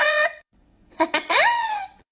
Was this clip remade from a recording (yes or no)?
yes